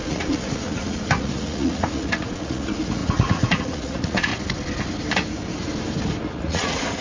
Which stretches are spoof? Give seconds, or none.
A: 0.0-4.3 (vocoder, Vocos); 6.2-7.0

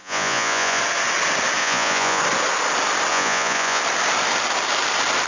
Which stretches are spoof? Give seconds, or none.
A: 0.0-0.8 (vocoder, Vocos); 1.6-2.2; 3.1-3.8

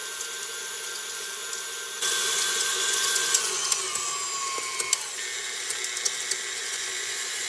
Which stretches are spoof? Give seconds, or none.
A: 0.6-1.4 (vocoder, Vocos); 2.0-3.8; 6.6-7.5

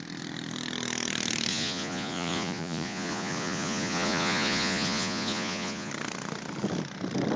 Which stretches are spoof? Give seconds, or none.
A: 1.5-5.9 (vocoder, Vocos)